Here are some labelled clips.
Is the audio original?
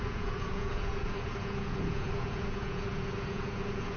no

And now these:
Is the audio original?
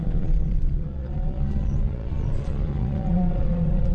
no